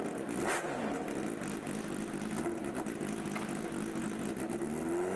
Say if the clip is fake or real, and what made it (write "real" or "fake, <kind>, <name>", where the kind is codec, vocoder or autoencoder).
real